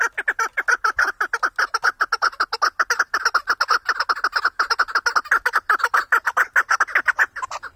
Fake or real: real